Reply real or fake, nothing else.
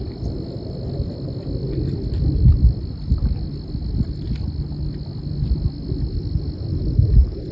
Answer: real